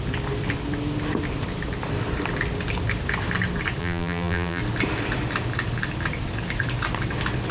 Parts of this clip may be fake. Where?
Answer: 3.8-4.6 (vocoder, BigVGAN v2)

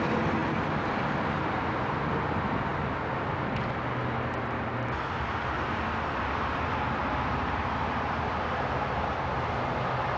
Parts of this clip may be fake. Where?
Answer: none

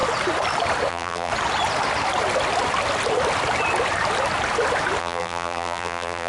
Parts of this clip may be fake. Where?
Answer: 0.9-1.3 (vocoder, BigVGAN v2); 5.0-6.3

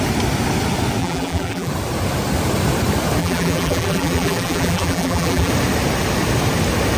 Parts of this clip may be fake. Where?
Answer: 1.0-1.7 (vocoder, BigVGAN v2); 3.2-5.5